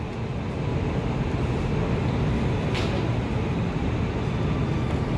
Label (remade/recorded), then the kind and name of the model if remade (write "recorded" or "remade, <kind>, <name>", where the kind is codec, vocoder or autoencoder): recorded